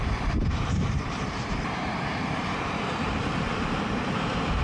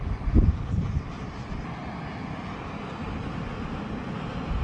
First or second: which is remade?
first